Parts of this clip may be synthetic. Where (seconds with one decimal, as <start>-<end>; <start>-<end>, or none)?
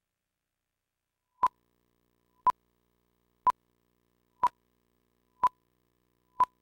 0.0-2.4; 3.7-6.6